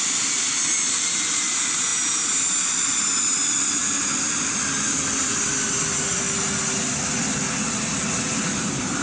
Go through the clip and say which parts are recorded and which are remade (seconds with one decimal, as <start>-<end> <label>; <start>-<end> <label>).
0.0-9.0 recorded